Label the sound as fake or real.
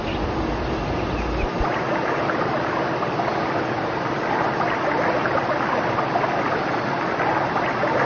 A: real